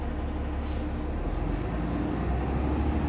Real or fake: real